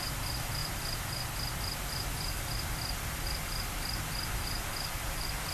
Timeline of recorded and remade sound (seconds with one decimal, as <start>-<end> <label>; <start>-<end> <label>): 0.0-0.6 recorded; 0.6-1.6 remade; 1.6-5.5 recorded